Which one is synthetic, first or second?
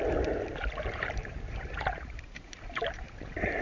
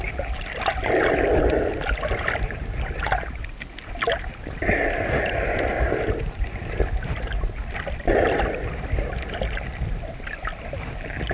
first